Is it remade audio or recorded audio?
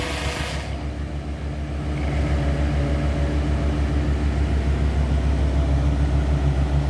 recorded